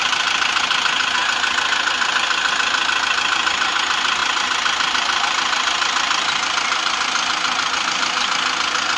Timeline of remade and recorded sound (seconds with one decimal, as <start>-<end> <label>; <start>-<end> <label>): 0.0-9.0 recorded